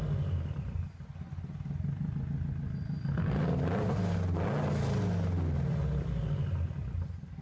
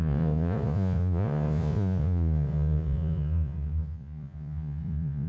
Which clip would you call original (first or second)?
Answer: first